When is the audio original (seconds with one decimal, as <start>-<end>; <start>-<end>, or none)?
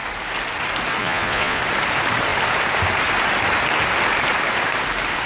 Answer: 0.0-1.0; 1.6-5.3